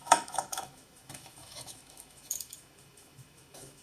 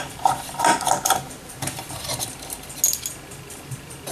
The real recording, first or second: second